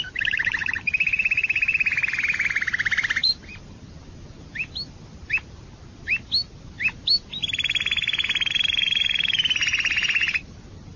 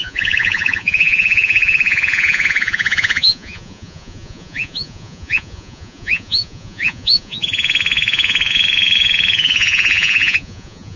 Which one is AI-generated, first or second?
second